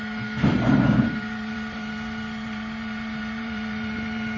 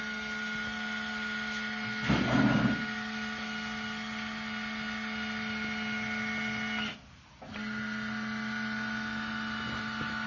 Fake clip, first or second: first